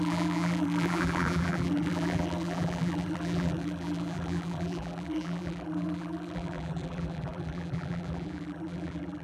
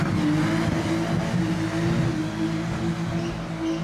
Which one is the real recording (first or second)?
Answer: second